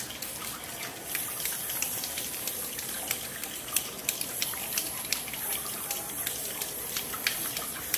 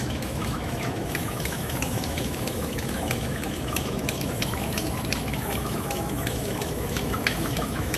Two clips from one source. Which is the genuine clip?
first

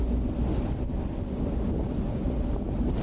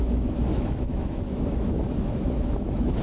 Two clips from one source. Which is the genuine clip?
first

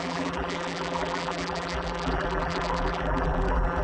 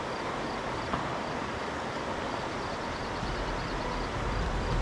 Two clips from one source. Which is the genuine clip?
second